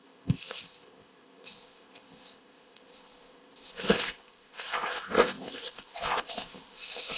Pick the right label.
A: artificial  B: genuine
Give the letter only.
A